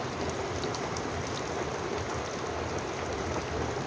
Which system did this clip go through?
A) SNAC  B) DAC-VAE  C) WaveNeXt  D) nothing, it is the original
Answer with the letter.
D